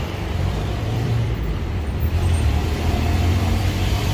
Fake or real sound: fake